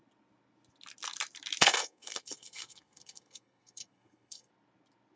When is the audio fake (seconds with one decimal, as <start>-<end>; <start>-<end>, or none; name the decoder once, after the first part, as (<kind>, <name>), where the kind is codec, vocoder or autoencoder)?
1.6-4.5 (codec, SNAC)

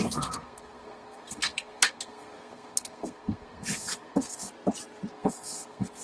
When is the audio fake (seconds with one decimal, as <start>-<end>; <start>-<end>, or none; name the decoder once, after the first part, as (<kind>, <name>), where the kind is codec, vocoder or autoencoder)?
0.0-4.5 (codec, SNAC); 5.1-6.0

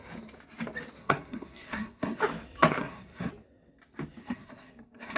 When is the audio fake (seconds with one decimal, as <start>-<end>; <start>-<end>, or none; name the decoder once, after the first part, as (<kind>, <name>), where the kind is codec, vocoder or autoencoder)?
1.0-2.2 (codec, SNAC); 2.7-3.3; 4.2-5.2

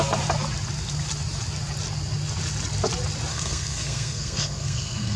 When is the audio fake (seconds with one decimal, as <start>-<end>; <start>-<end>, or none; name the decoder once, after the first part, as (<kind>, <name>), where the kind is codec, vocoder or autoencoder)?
3.3-5.2 (codec, SNAC)